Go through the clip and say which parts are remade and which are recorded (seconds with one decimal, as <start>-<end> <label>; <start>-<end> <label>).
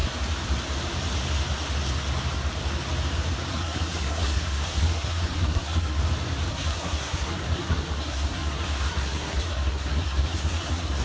0.0-3.5 recorded; 3.5-6.0 remade; 6.0-6.5 recorded; 6.5-11.0 remade